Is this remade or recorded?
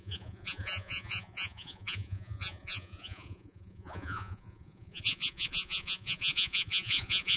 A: remade